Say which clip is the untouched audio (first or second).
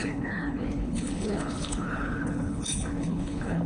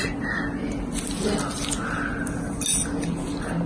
second